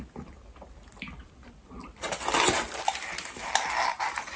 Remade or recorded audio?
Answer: recorded